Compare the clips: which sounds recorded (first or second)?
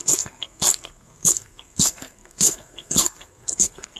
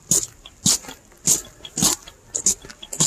second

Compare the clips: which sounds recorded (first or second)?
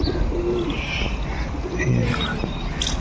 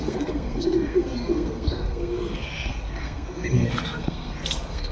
first